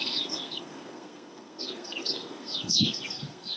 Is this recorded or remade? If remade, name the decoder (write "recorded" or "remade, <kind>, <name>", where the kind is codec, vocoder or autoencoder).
remade, codec, SNAC